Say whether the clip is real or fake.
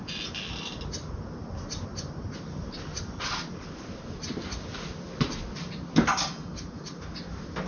real